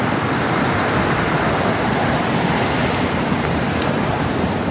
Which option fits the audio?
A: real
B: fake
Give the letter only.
B